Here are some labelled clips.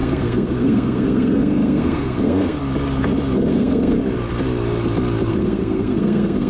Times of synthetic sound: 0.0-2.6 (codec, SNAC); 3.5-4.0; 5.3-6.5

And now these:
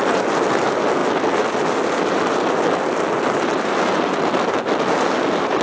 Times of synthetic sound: none

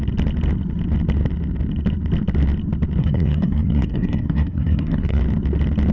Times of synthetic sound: 3.0-5.2 (codec, SNAC)

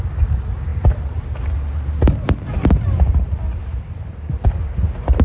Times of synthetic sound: none

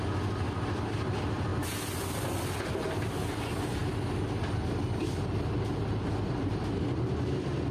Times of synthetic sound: none